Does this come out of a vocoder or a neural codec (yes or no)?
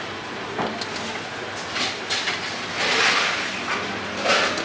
no